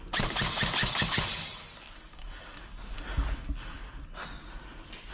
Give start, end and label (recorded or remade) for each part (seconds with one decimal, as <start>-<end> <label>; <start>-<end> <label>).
0.0-0.8 recorded; 0.8-3.9 remade; 3.9-5.1 recorded